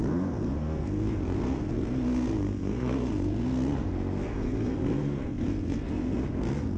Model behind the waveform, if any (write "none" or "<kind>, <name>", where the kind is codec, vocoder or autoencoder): codec, SNAC